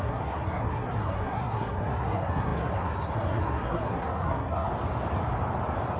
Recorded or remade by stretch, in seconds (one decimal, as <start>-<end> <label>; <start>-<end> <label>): 0.0-4.7 remade; 4.7-6.0 recorded